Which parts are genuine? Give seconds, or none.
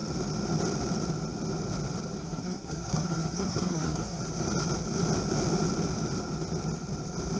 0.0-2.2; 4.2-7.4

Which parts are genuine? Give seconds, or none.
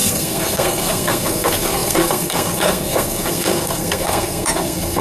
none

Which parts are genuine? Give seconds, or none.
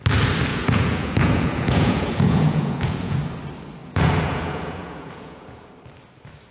0.0-0.5; 3.2-3.8; 5.7-6.5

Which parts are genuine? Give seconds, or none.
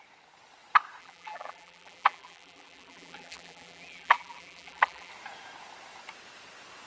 0.0-1.0; 5.1-6.9